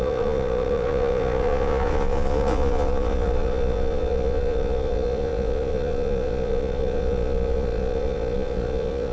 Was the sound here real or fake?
fake